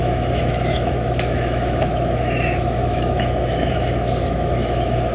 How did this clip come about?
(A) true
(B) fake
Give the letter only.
B